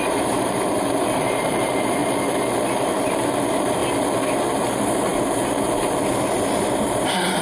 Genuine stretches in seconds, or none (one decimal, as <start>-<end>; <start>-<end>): 2.0-2.9; 3.8-4.6; 5.1-6.5